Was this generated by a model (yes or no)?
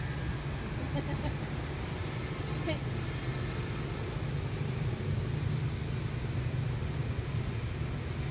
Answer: no